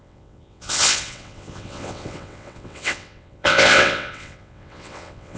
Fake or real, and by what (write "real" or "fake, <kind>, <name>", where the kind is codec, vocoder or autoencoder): fake, vocoder, WaveNeXt